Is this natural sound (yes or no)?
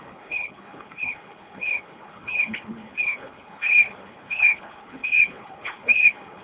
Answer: no